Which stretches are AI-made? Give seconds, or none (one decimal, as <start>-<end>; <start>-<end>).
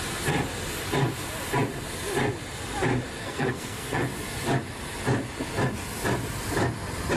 3.2-4.1